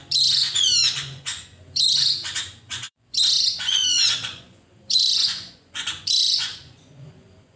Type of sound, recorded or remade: remade